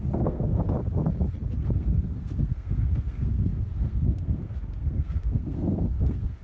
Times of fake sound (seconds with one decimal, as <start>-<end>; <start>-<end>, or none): 0.0-0.6; 1.6-6.4